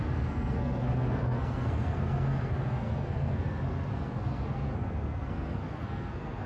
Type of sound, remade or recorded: remade